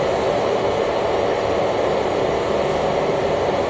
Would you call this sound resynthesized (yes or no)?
no